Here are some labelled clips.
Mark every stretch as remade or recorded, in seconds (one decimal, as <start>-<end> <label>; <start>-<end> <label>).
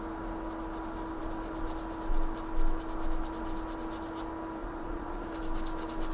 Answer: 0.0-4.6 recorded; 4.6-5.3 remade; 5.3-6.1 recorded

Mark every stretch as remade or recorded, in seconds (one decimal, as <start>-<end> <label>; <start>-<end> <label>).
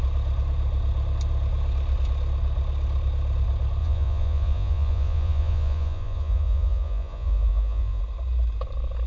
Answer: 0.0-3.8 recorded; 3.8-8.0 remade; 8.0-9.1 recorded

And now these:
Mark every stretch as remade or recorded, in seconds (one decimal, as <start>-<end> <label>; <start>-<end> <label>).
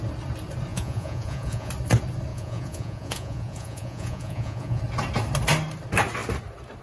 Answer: 0.0-0.7 recorded; 0.7-1.7 remade; 1.7-2.3 recorded; 2.3-4.8 remade; 4.8-6.8 recorded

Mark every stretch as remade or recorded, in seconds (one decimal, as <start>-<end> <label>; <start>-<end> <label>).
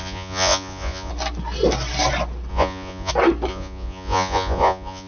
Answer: 0.0-1.1 remade; 1.1-2.5 recorded; 2.5-3.1 remade; 3.1-3.5 recorded; 3.5-5.1 remade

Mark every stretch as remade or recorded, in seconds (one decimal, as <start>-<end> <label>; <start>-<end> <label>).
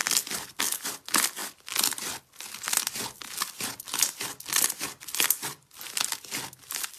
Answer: 0.0-7.0 recorded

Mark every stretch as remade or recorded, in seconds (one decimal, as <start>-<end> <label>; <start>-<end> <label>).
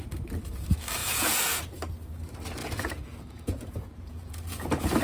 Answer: 0.0-1.0 recorded; 1.0-1.7 remade; 1.7-2.6 recorded; 2.6-5.0 remade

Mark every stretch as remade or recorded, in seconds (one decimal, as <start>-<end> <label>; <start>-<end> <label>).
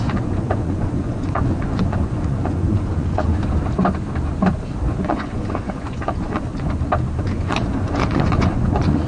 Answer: 0.0-3.3 remade; 3.3-5.0 recorded; 5.0-6.5 remade; 6.5-7.2 recorded; 7.2-9.1 remade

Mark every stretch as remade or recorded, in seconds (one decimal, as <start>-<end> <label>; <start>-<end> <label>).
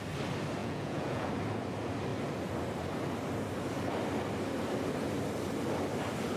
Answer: 0.0-0.6 recorded; 0.6-1.3 remade; 1.3-6.4 recorded